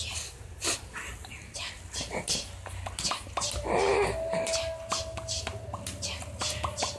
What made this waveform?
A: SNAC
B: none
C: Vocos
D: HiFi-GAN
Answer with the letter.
B